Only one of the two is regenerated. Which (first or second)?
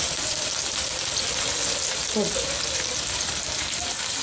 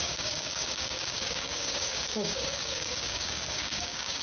second